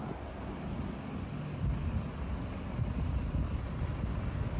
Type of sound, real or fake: real